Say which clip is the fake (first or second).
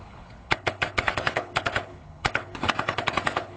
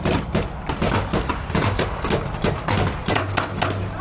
first